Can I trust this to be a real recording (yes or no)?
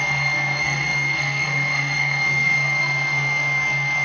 no